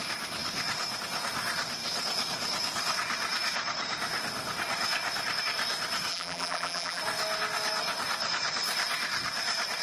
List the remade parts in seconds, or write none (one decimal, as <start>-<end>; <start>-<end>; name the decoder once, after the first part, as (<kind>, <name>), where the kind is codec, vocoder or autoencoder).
6.1-7.0 (vocoder, BigVGAN v2)